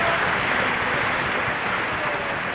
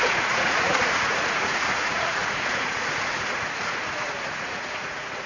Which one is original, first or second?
first